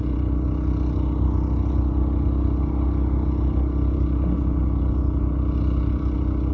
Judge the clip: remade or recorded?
recorded